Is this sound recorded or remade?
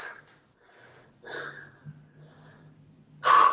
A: recorded